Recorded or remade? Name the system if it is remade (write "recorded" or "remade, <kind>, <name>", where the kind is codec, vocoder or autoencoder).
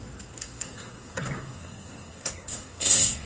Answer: remade, codec, SNAC